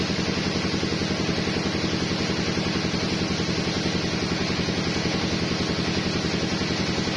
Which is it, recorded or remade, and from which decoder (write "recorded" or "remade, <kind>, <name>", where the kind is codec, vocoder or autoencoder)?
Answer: recorded